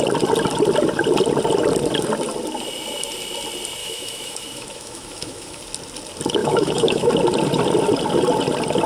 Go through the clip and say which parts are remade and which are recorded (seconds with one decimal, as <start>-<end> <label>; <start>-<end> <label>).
0.0-3.8 recorded; 3.8-5.6 remade; 5.6-6.4 recorded; 6.4-7.1 remade; 7.1-8.9 recorded